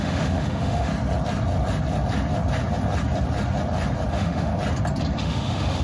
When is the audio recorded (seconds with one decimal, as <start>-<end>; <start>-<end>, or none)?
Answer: 0.9-4.1; 4.5-5.2